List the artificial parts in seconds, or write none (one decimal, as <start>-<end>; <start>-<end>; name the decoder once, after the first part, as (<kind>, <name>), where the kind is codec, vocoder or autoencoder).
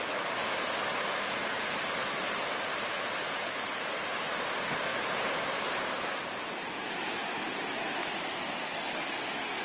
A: 2.7-4.4 (vocoder, BigVGAN v2); 4.9-6.2